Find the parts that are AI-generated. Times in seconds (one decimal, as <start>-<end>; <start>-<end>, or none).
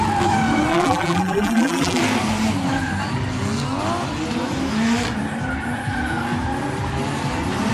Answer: 0.7-2.0